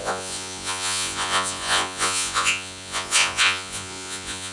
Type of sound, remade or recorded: remade